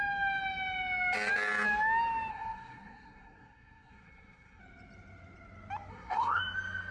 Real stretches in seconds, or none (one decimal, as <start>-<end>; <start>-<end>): 0.0-2.3; 4.6-5.9; 6.4-6.9